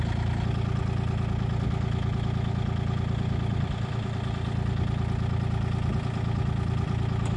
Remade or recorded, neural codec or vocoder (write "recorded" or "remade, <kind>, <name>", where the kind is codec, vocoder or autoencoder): recorded